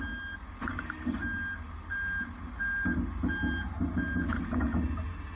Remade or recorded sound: recorded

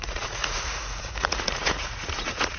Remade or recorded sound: remade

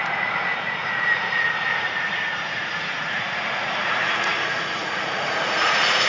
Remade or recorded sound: remade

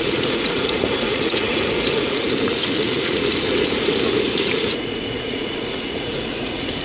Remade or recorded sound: remade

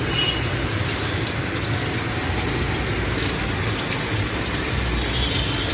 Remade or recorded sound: recorded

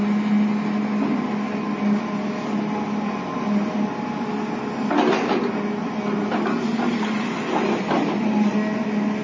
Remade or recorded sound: recorded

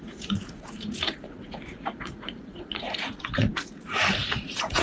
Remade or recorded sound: remade